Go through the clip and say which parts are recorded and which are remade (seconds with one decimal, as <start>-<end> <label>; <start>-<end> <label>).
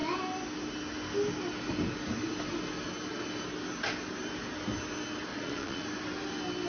0.0-5.3 recorded; 5.3-5.8 remade; 5.8-6.7 recorded